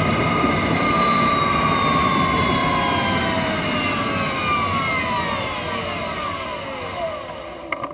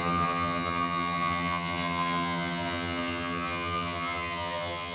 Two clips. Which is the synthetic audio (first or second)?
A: second